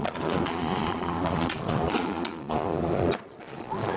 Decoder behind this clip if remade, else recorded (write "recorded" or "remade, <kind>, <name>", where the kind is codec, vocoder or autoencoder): remade, vocoder, Vocos